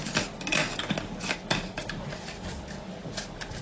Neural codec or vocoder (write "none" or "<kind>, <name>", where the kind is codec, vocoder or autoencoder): none